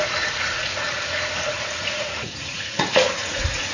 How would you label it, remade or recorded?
remade